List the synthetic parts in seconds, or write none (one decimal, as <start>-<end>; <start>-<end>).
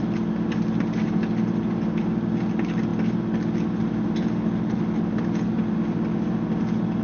none